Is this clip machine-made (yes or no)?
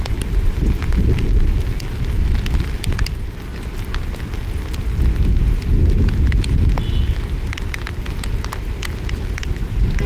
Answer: no